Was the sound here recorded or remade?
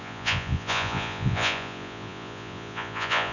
remade